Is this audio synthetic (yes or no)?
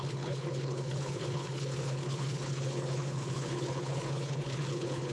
yes